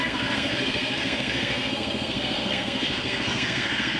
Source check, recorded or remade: remade